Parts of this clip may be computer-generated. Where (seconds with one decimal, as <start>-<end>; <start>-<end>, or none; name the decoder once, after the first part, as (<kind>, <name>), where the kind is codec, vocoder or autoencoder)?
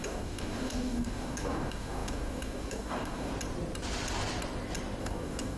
0.0-3.3 (codec, DAC); 5.0-5.6